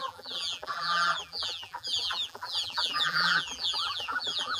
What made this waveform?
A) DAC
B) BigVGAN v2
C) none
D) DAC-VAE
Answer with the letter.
B